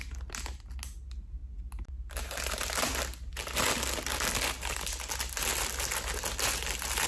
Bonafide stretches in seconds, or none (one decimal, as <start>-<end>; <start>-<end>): 0.0-7.1